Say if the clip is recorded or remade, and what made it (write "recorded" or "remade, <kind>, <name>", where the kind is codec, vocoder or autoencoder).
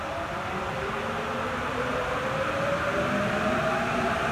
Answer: recorded